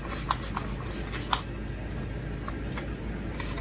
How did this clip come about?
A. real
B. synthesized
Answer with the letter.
A